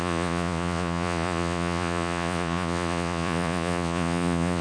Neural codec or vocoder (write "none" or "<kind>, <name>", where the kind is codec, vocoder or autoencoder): vocoder, Vocos